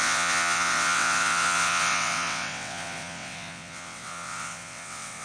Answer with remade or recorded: remade